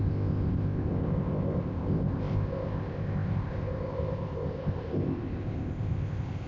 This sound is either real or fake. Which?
fake